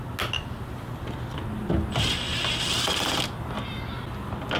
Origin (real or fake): real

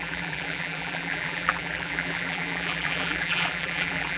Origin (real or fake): fake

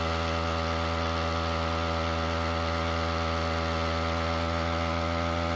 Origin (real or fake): real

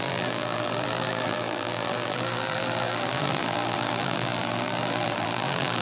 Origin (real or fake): fake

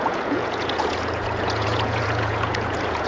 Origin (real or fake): fake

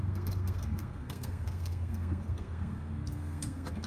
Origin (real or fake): fake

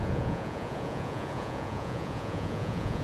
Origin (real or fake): fake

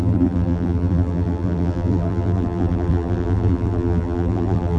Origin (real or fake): fake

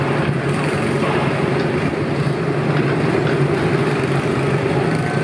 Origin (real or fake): real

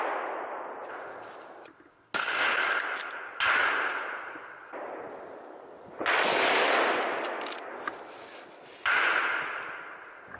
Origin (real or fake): real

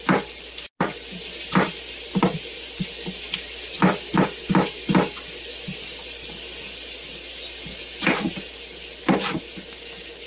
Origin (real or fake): real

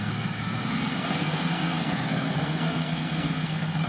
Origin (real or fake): fake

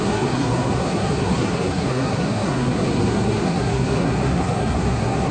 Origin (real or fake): fake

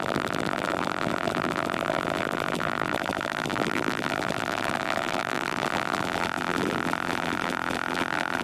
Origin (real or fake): fake